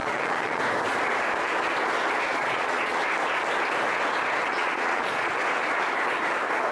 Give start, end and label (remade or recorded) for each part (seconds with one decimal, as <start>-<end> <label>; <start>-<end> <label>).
0.0-0.6 remade; 0.6-2.3 recorded; 2.3-3.0 remade; 3.0-4.5 recorded; 4.5-5.3 remade; 5.3-6.7 recorded